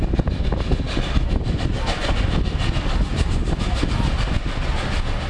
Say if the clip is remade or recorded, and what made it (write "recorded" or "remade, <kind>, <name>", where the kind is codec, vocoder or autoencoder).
recorded